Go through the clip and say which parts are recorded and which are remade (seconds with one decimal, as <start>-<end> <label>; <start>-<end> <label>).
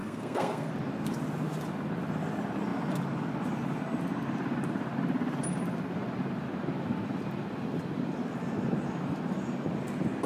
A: 0.0-0.7 remade; 0.7-10.3 recorded